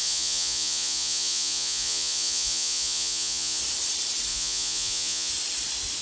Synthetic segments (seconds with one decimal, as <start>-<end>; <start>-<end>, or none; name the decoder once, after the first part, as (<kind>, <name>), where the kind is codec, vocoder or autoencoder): 0.0-3.6 (vocoder, Vocos); 4.3-5.3

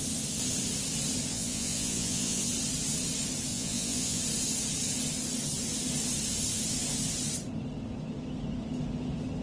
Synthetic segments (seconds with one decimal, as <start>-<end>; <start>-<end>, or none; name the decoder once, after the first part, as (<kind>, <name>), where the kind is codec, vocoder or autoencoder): 1.3-2.5 (vocoder, Vocos); 3.5-4.2

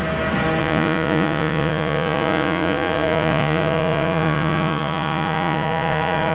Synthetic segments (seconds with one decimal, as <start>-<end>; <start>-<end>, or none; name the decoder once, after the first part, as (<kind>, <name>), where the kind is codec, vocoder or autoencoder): 0.6-6.3 (vocoder, Vocos)

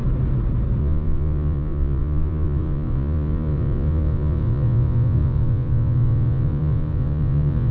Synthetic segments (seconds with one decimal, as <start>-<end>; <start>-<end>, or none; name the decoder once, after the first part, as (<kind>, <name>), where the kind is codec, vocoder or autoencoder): 0.8-7.7 (vocoder, Vocos)

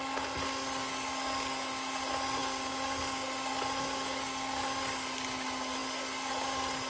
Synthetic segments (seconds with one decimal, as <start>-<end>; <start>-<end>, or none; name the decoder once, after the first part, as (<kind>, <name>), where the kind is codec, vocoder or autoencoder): none

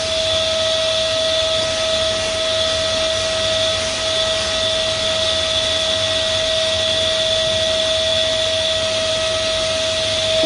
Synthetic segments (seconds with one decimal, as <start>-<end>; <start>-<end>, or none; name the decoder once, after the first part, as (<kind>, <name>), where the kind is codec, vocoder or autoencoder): none

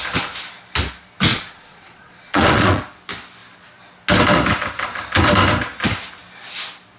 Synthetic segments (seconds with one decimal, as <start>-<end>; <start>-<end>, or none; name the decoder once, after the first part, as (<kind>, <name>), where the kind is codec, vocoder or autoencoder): 1.3-2.8 (vocoder, Vocos)

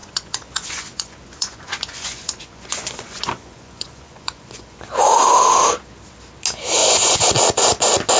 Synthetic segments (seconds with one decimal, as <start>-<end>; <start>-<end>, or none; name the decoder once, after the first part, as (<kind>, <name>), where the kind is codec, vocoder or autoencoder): 0.0-4.8 (vocoder, Vocos); 6.8-7.3